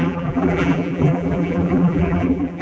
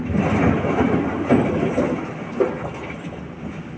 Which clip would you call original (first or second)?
second